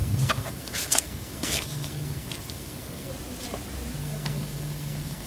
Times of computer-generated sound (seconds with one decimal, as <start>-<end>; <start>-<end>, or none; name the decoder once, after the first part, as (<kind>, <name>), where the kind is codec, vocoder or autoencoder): 0.0-3.1 (codec, SNAC); 4.0-5.3